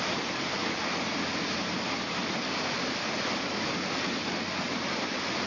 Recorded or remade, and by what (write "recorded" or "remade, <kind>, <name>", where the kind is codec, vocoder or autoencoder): remade, vocoder, BigVGAN v2